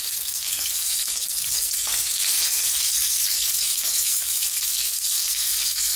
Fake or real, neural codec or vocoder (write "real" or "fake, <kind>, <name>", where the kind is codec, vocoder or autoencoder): fake, codec, SNAC